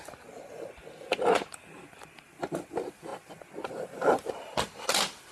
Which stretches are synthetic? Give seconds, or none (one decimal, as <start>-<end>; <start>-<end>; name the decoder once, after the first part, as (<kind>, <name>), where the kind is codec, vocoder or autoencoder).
none